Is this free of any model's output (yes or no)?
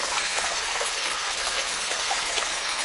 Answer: no